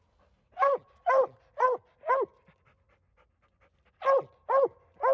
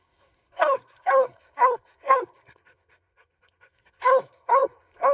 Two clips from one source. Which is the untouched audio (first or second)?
first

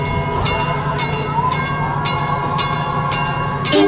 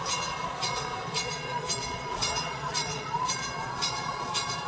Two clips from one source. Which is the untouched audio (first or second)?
first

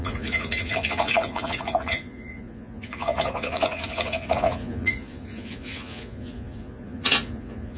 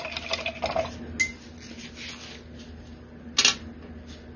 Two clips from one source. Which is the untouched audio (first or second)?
second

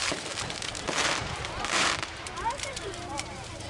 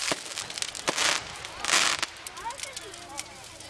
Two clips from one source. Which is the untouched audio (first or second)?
second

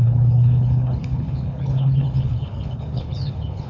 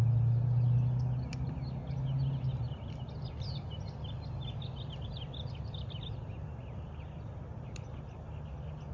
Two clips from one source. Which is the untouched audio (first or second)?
second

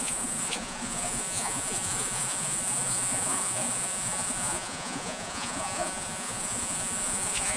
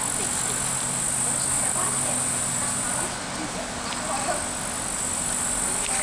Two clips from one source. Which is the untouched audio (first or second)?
second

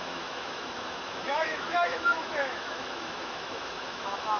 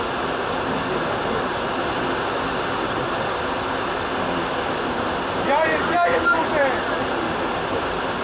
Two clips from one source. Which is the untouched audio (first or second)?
second